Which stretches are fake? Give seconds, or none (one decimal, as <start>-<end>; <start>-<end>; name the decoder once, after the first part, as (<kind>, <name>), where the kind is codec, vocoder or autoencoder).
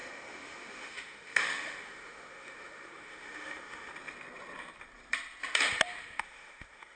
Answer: 0.0-3.9 (autoencoder, DAC-VAE); 6.2-7.0